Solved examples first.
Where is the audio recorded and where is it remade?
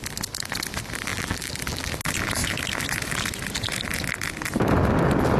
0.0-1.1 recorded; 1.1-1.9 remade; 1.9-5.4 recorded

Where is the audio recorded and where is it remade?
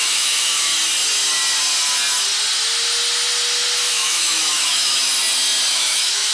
0.0-0.7 remade; 0.7-3.9 recorded; 3.9-5.1 remade; 5.1-5.7 recorded; 5.7-6.3 remade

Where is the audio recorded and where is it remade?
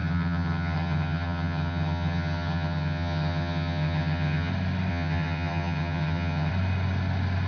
0.0-4.5 remade; 4.5-4.9 recorded; 4.9-6.5 remade; 6.5-7.5 recorded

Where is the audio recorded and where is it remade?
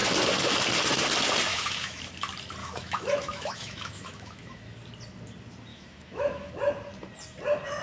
0.0-1.5 recorded; 1.5-2.0 remade; 2.0-2.6 recorded; 2.6-4.6 remade; 4.6-5.7 recorded; 5.7-6.5 remade; 6.5-7.8 recorded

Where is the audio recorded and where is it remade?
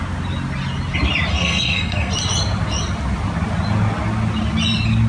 0.0-1.3 recorded; 1.3-2.1 remade; 2.1-5.1 recorded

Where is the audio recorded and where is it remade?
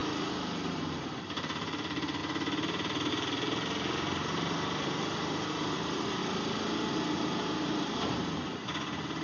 0.0-0.7 recorded; 0.7-2.2 remade; 2.2-3.1 recorded; 3.1-6.2 remade; 6.2-6.9 recorded; 6.9-8.6 remade; 8.6-9.2 recorded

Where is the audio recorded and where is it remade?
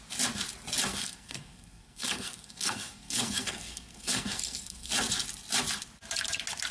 0.0-0.9 recorded; 0.9-4.9 remade; 4.9-6.7 recorded